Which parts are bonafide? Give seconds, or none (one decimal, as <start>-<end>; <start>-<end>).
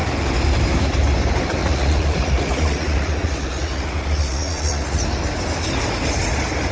0.0-1.6; 5.0-6.7